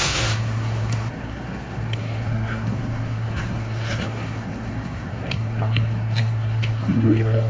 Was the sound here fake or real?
fake